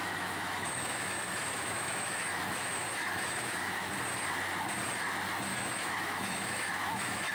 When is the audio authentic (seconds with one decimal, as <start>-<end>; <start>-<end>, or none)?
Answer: 3.9-5.5